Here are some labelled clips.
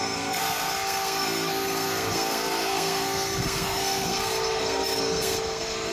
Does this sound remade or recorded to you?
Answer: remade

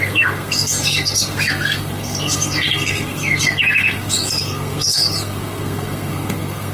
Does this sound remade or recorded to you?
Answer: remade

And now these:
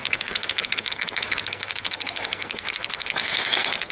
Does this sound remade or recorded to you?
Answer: remade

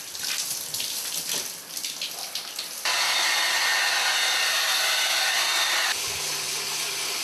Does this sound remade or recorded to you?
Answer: recorded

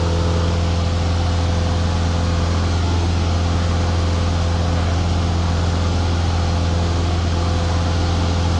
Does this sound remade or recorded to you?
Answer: recorded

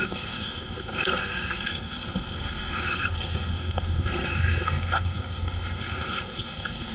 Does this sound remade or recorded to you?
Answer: remade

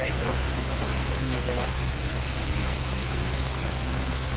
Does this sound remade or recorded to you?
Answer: remade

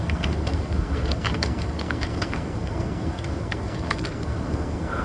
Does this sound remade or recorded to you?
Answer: remade